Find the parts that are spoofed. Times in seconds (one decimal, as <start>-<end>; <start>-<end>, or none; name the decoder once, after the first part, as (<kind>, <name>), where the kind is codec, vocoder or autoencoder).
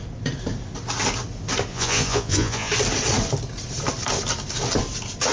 1.7-2.7 (vocoder, Vocos)